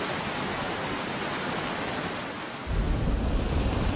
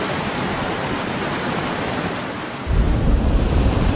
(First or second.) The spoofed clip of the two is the second